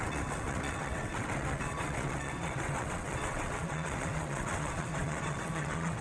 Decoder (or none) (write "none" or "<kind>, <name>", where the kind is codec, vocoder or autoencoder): vocoder, WaveNeXt